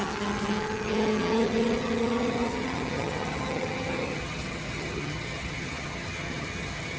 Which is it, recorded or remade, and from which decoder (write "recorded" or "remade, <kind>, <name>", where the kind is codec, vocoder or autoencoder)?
remade, vocoder, HiFi-GAN